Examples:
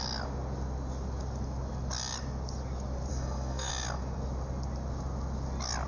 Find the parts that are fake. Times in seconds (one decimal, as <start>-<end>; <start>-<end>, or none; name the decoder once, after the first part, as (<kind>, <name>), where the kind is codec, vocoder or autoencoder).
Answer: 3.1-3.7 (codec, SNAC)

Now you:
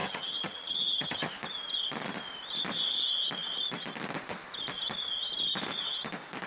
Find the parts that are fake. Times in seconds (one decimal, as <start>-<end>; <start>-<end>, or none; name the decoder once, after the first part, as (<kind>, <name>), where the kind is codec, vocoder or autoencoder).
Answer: 0.0-1.3 (vocoder, HiFi-GAN)

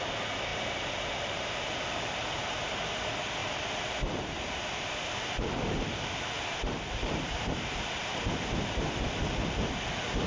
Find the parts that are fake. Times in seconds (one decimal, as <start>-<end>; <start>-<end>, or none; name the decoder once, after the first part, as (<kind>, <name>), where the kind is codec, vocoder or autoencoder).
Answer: 0.5-2.0 (vocoder, BigVGAN v2); 3.4-7.9

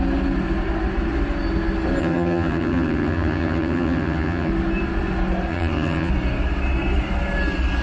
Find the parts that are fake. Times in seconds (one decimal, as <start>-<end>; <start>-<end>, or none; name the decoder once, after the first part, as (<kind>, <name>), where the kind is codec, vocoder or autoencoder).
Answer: 2.0-4.5 (vocoder, HiFi-GAN); 5.5-6.1

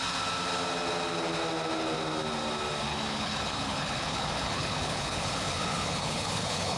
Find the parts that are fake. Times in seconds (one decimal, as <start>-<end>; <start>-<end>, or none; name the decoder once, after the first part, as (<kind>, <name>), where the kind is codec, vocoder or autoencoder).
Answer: 2.9-6.8 (codec, HILCodec)